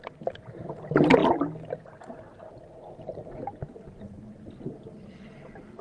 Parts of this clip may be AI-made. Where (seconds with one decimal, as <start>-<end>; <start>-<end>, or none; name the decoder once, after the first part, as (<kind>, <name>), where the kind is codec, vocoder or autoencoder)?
none